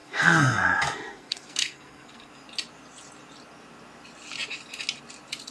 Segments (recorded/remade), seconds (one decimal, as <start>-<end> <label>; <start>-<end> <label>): 0.0-2.3 remade; 2.3-5.5 recorded